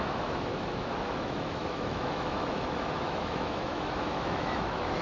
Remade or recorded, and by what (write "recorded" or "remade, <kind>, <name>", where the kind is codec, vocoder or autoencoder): remade, autoencoder, DAC-VAE